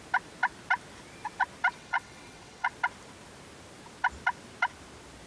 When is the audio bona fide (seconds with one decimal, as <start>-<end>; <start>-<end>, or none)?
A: 0.0-1.8; 2.7-5.3